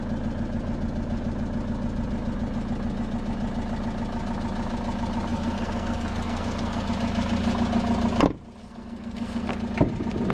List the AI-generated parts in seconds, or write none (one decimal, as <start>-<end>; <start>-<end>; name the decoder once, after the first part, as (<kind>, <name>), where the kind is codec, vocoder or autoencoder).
5.3-6.9 (codec, SNAC); 8.6-9.5